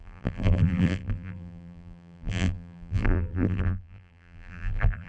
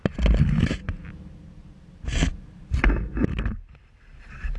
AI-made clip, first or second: first